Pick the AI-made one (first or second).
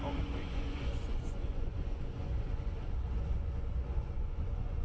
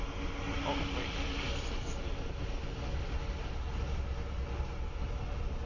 first